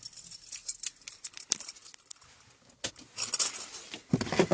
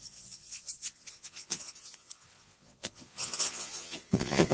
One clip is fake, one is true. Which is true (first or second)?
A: first